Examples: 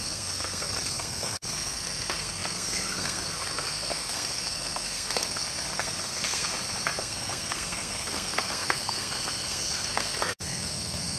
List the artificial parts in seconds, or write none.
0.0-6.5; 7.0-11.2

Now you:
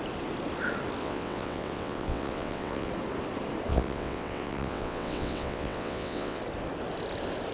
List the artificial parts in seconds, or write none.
1.0-2.9; 3.7-6.4

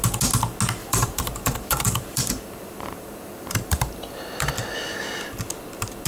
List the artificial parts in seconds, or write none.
0.8-4.5

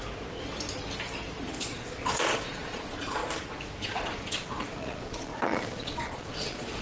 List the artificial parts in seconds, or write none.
1.6-3.2; 3.8-6.8

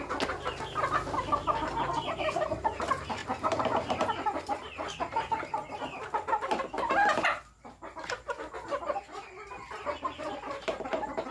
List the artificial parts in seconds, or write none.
3.2-4.6